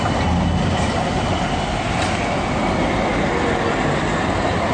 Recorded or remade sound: recorded